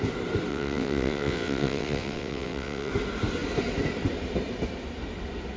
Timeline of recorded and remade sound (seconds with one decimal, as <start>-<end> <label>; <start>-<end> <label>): 0.0-0.5 recorded; 0.5-2.9 remade; 2.9-5.6 recorded